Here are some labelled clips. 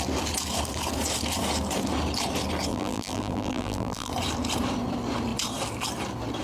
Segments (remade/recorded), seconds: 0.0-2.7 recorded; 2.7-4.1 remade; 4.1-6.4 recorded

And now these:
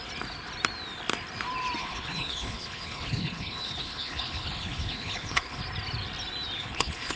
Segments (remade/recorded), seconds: 0.0-1.8 recorded; 1.8-5.6 remade; 5.6-6.6 recorded; 6.6-7.2 remade

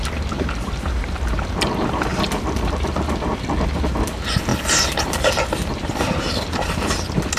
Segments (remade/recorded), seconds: 0.0-7.4 recorded

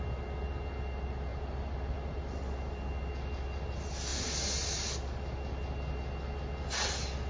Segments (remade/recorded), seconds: 0.0-7.3 recorded

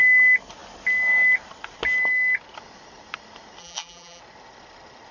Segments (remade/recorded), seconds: 0.0-3.6 recorded; 3.6-4.2 remade; 4.2-5.1 recorded